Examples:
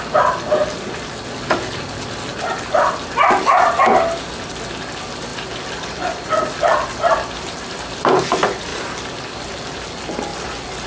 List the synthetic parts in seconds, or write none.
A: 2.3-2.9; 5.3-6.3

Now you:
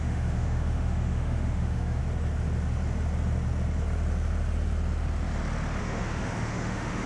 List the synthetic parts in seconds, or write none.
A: 0.0-2.0; 5.8-7.1

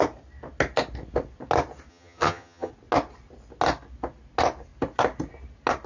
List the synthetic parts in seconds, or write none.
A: 1.9-2.7

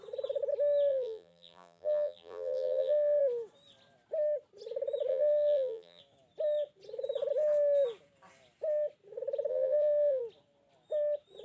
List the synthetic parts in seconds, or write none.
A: 0.9-3.2; 5.1-6.0; 9.5-10.2